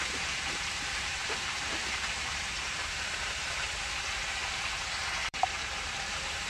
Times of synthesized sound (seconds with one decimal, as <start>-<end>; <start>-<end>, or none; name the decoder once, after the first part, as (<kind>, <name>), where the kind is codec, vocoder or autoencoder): 0.0-6.5 (vocoder, BigVGAN v2)